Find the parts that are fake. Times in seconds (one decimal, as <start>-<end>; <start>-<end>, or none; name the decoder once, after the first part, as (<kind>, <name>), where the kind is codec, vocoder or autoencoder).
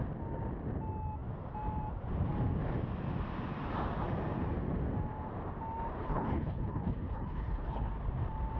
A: 6.0-7.9 (codec, HILCodec)